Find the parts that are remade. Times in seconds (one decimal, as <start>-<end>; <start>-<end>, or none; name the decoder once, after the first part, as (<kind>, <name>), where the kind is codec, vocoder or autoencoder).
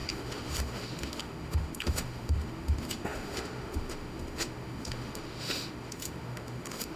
0.0-7.0 (autoencoder, DAC-VAE)